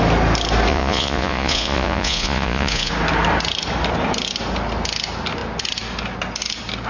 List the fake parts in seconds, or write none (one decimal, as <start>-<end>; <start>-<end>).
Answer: 0.7-2.9